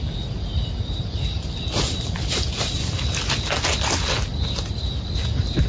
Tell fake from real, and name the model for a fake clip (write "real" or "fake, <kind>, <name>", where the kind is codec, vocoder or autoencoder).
real